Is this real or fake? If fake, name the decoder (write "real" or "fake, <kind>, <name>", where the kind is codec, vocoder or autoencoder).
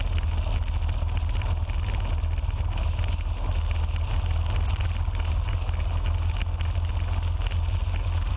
real